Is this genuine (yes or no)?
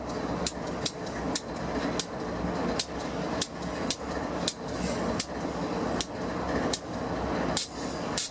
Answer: yes